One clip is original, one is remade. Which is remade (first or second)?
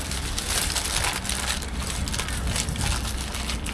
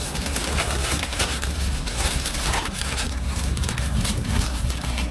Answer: second